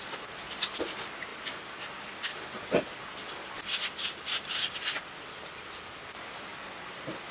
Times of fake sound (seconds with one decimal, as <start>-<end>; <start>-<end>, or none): none